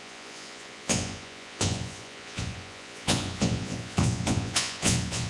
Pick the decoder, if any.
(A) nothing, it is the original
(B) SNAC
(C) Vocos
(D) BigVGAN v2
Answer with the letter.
C